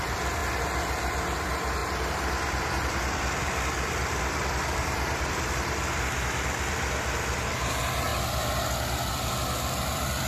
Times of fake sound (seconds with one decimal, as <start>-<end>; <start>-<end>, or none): 0.0-0.4; 1.1-8.1; 9.1-10.3